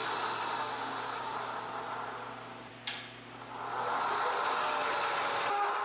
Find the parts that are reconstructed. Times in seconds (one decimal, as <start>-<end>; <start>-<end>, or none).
none